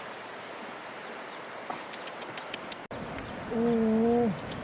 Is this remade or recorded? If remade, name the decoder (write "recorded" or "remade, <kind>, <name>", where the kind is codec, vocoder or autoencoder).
recorded